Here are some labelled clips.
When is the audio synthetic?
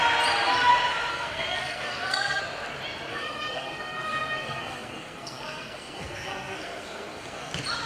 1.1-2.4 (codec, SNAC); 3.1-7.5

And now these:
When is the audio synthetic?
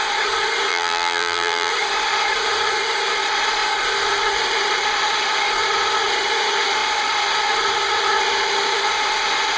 0.7-1.7 (vocoder, BigVGAN v2)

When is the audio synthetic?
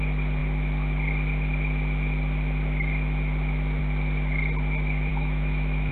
5.1-5.9 (autoencoder, DAC-VAE)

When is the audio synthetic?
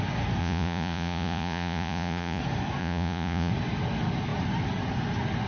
0.4-2.4 (vocoder, Vocos); 2.8-3.5